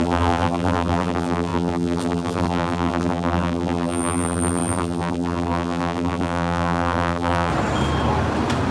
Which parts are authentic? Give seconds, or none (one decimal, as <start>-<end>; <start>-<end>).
7.5-8.7